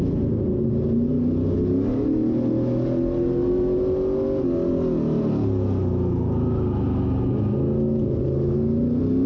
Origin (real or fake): real